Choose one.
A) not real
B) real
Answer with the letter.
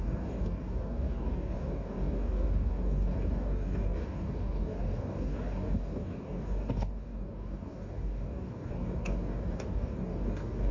A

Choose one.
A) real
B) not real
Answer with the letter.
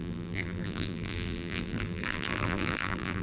B